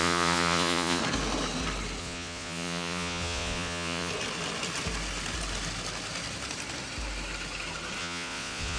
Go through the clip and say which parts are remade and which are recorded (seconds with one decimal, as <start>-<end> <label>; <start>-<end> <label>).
0.0-1.0 remade; 1.0-2.0 recorded; 2.0-4.1 remade; 4.1-8.0 recorded; 8.0-8.8 remade